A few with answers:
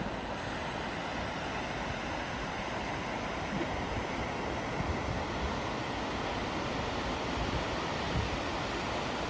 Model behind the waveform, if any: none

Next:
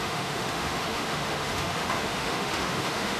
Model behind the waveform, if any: autoencoder, DAC-VAE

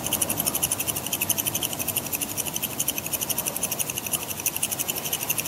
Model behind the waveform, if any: none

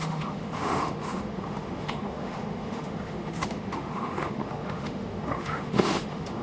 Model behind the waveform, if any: autoencoder, DAC-VAE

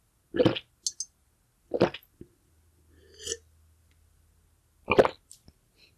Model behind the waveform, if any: none